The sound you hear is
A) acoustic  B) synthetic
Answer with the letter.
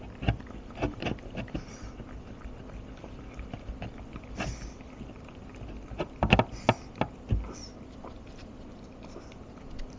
A